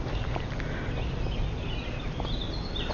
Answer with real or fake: real